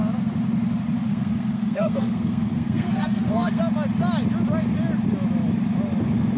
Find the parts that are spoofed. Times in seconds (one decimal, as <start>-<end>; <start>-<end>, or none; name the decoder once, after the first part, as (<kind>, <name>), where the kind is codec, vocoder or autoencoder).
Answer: 1.1-3.6 (codec, SNAC)